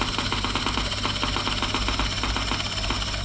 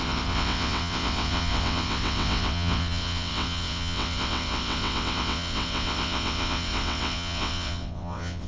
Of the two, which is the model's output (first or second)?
second